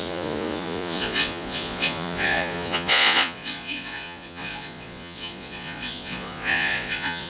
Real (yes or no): no